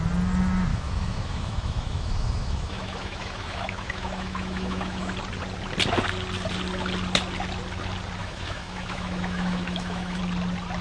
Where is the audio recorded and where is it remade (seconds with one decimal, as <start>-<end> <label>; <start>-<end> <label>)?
0.0-0.7 recorded; 0.7-5.1 remade; 5.1-8.2 recorded; 8.2-10.2 remade; 10.2-10.8 recorded